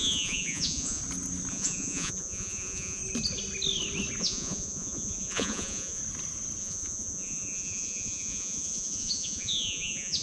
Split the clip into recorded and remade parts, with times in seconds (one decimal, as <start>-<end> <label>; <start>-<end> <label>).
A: 0.0-1.0 remade; 1.0-1.5 recorded; 1.5-3.0 remade; 3.0-4.2 recorded; 4.2-6.0 remade; 6.0-6.6 recorded; 6.6-10.2 remade